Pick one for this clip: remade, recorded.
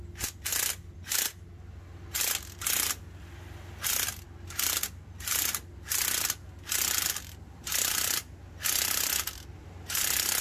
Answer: recorded